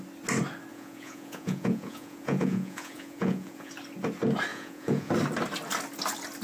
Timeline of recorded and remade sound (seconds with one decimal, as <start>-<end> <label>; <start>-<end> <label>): 0.0-0.7 recorded; 0.7-3.7 remade; 3.7-4.5 recorded; 4.5-5.1 remade; 5.1-6.4 recorded